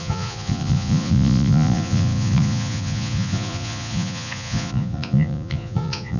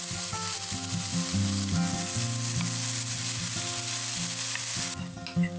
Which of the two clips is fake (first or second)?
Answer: first